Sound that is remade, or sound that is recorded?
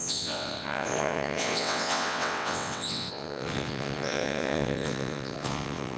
remade